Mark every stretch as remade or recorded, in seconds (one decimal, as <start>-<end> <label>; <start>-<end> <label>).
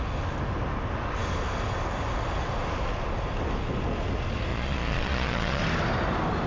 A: 0.0-4.5 recorded; 4.5-5.6 remade; 5.6-6.5 recorded